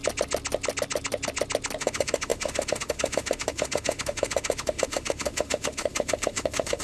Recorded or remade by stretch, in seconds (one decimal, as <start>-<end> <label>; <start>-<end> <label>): 0.0-1.8 recorded; 1.8-6.8 remade